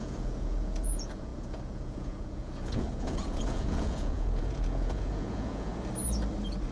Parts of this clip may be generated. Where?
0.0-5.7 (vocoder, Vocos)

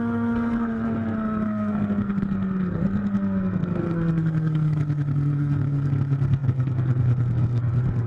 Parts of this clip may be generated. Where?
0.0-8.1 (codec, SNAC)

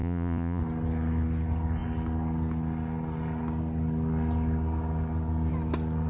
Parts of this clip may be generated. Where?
0.0-0.6 (vocoder, Vocos)

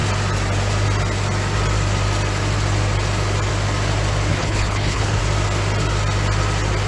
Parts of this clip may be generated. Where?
4.3-5.2 (codec, HILCodec)

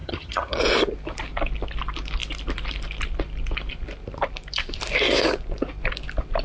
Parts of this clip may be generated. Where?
0.0-0.6 (vocoder, HiFi-GAN)

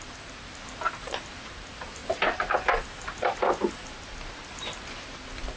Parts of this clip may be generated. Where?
none